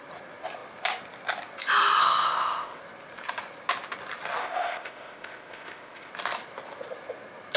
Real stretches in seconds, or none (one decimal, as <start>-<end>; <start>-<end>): 0.0-2.0; 2.8-4.4; 6.1-7.6

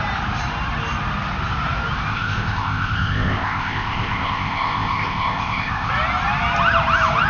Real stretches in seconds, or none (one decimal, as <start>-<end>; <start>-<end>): 0.0-2.1; 5.9-7.3

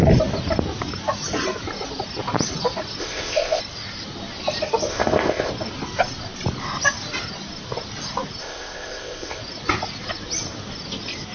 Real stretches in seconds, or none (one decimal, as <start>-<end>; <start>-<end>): 0.0-3.0; 3.6-4.9; 5.5-8.4; 9.4-11.3

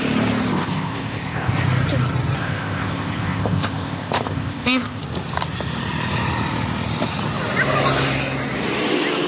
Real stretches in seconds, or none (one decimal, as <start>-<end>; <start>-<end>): 0.0-0.5; 1.5-2.4; 5.0-9.3